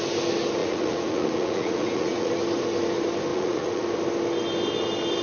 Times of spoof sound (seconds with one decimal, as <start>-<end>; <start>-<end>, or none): 0.6-2.3; 3.3-3.9